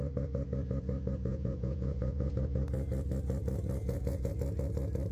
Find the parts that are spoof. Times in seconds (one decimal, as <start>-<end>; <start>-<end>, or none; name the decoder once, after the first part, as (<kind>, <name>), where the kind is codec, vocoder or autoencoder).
1.3-2.3 (vocoder, Vocos); 3.8-4.3